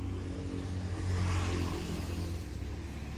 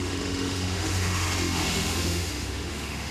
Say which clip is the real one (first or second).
first